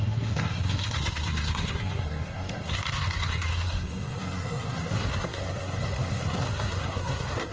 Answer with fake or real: fake